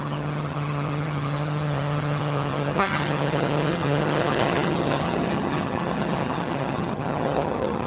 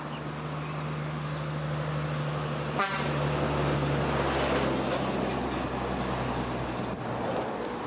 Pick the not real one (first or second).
first